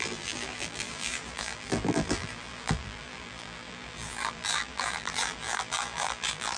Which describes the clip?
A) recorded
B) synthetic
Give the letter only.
B